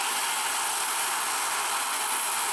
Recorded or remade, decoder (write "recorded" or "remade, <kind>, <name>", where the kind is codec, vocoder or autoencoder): recorded